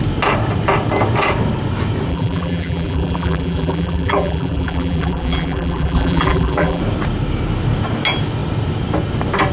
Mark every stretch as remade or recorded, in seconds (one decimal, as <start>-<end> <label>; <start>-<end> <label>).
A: 0.0-2.1 recorded; 2.1-6.8 remade; 6.8-9.5 recorded